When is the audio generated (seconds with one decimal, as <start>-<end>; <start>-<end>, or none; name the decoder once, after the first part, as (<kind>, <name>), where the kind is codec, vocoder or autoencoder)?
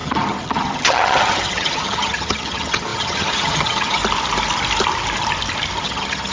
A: 0.0-4.0 (vocoder, HiFi-GAN); 5.8-6.3